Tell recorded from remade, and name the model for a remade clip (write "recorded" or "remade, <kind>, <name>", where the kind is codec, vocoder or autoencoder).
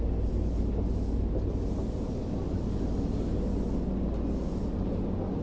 recorded